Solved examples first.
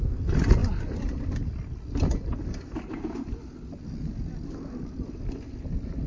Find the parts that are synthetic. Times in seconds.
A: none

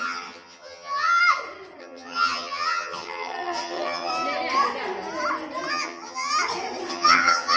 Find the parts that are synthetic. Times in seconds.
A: 0.0-1.2 (vocoder, HiFi-GAN); 1.8-4.1; 5.7-6.3; 6.9-7.6